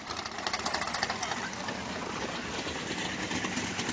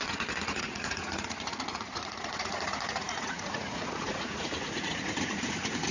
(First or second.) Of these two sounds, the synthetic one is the second